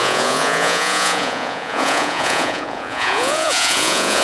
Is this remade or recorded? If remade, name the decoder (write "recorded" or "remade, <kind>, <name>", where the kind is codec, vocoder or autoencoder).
remade, vocoder, Vocos